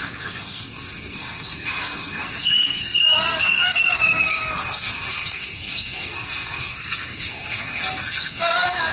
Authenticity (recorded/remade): remade